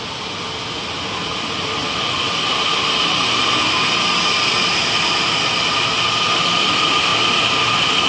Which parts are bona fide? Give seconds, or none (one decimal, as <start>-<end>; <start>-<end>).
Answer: 0.0-1.8; 3.4-4.8; 5.3-7.1